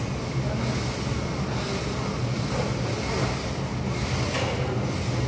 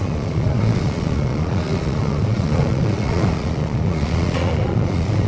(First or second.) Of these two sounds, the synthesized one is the second